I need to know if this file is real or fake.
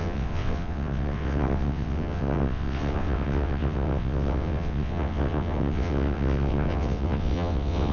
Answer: fake